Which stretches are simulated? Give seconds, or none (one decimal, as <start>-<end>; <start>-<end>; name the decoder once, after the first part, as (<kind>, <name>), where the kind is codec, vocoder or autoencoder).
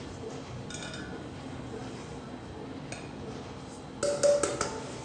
none